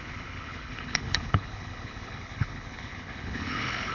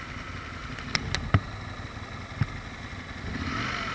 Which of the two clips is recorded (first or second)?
second